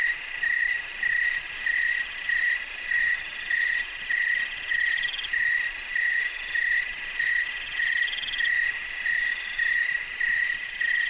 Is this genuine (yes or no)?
yes